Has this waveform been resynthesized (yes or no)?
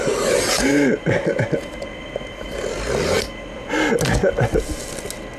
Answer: no